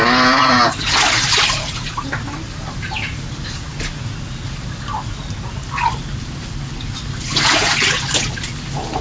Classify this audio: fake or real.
real